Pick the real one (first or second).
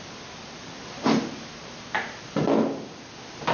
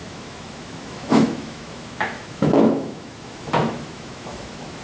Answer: first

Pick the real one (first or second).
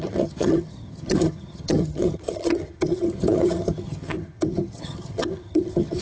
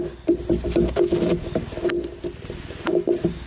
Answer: second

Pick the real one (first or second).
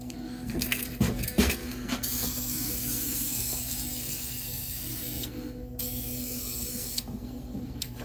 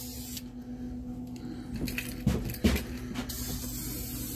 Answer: second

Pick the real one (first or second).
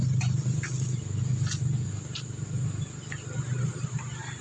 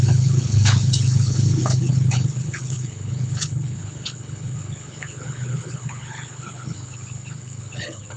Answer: first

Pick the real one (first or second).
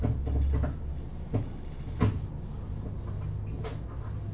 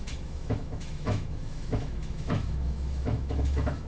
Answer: first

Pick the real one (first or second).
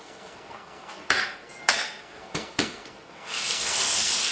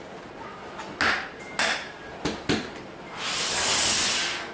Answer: second